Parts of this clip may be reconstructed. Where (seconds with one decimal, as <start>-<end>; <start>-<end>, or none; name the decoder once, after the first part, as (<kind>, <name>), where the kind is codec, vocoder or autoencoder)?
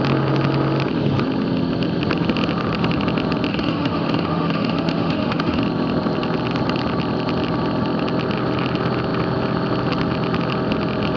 3.5-5.6 (autoencoder, DAC-VAE)